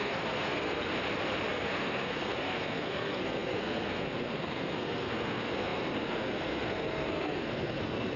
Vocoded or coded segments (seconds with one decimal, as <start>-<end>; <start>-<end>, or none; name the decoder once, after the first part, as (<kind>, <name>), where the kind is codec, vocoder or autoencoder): 0.0-0.9 (codec, SNAC); 1.5-8.2